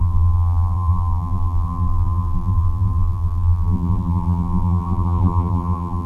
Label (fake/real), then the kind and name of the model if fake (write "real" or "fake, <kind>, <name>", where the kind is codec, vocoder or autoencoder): fake, vocoder, BigVGAN v2